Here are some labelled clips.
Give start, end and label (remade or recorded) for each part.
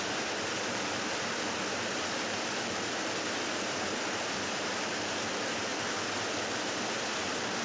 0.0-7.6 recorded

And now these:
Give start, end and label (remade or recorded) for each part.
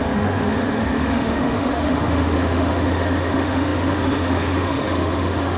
0.0-5.6 remade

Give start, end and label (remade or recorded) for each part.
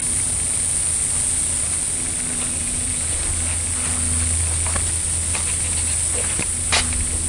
0.0-2.6 recorded; 2.6-3.2 remade; 3.2-7.3 recorded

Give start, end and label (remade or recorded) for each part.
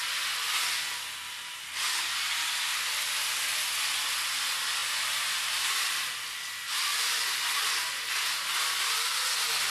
0.0-4.8 recorded; 4.8-8.1 remade; 8.1-9.7 recorded